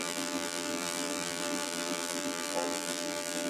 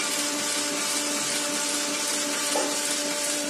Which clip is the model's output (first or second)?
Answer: first